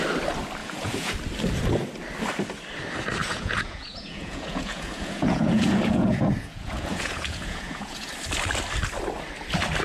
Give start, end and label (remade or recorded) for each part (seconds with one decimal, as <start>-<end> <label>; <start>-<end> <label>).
0.0-0.6 recorded; 0.6-1.1 remade; 1.1-3.2 recorded; 3.2-8.1 remade; 8.1-9.8 recorded